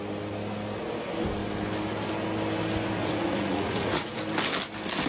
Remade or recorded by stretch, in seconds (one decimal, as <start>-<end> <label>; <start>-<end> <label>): 0.0-3.0 recorded; 3.0-4.2 remade; 4.2-5.1 recorded